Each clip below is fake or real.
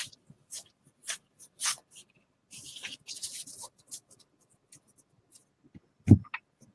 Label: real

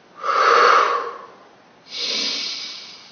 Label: real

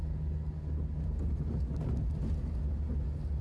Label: real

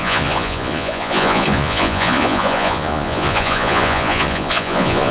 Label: fake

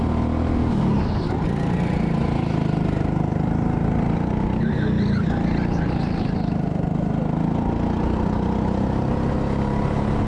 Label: real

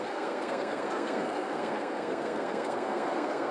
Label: fake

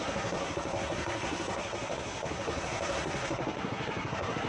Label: fake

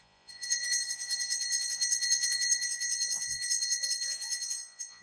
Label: fake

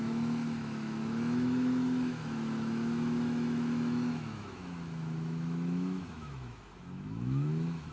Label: fake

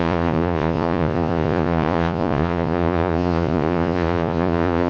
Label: fake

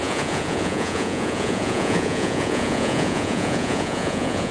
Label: fake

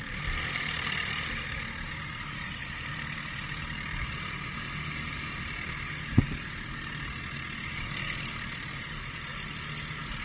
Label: real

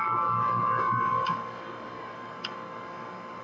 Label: fake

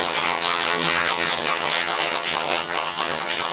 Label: fake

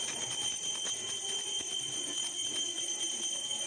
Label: real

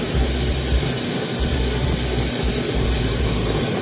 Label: real